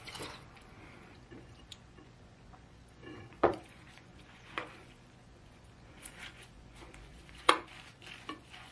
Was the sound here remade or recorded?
remade